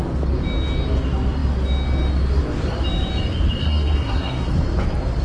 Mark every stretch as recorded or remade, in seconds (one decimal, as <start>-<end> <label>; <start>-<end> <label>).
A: 0.0-3.6 recorded; 3.6-4.5 remade; 4.5-5.2 recorded